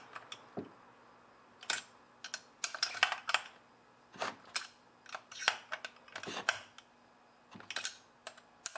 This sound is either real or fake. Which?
real